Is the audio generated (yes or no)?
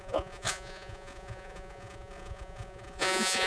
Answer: yes